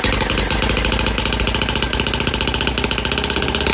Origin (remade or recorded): recorded